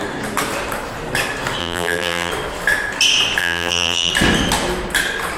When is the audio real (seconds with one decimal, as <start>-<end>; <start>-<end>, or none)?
0.0-1.6; 2.3-3.4; 4.1-5.4